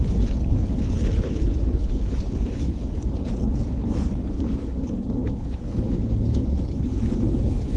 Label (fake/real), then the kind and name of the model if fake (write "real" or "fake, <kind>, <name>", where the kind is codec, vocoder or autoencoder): fake, codec, HILCodec